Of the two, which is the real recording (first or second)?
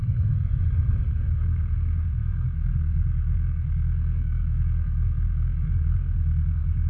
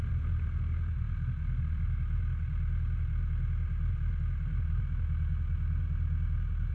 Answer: second